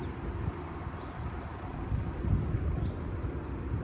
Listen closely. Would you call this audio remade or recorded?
recorded